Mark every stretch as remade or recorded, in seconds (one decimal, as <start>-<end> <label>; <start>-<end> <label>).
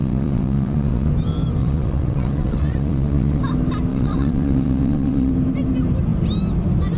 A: 0.0-1.1 remade; 1.1-1.6 recorded; 1.6-3.4 remade; 3.4-3.9 recorded; 3.9-5.3 remade; 5.3-7.0 recorded